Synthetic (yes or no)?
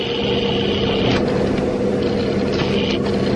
no